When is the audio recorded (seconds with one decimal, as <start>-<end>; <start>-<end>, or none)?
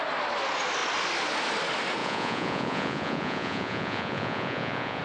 0.0-2.0